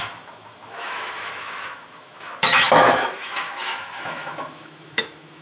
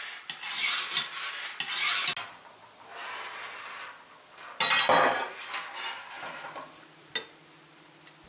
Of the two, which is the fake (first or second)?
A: first